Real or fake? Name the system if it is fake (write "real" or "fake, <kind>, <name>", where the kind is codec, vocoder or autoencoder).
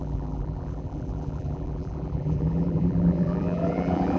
fake, vocoder, BigVGAN v2